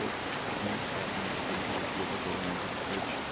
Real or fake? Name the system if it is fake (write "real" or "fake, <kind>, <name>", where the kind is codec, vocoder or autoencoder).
real